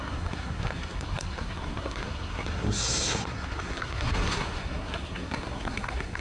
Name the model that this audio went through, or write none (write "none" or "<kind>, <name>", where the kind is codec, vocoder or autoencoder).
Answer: codec, SNAC